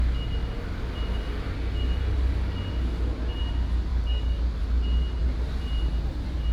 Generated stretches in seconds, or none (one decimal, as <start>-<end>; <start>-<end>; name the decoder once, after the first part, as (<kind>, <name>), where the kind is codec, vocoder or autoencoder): 3.9-4.6 (codec, DAC)